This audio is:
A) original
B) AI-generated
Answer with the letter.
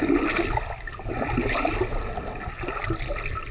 A